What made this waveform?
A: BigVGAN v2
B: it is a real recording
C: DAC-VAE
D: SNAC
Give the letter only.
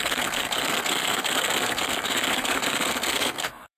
D